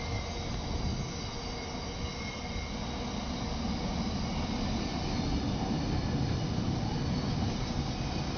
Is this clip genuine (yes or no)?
yes